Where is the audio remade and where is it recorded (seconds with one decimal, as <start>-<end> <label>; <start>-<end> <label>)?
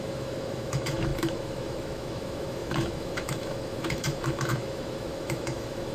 0.0-5.9 remade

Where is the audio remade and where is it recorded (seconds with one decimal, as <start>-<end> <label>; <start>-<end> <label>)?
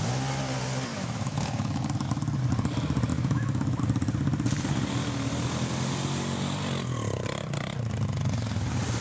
0.0-0.9 recorded; 0.9-1.8 remade; 1.8-3.1 recorded; 3.1-3.8 remade; 3.8-9.0 recorded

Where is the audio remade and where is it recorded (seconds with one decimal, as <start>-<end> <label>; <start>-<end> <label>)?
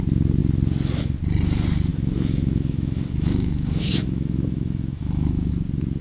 0.0-1.9 recorded; 1.9-5.5 remade; 5.5-6.0 recorded